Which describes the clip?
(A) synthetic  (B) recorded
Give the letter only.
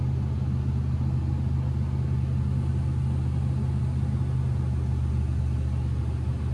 B